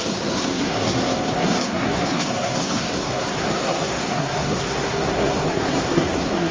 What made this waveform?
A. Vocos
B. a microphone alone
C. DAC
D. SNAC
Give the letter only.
D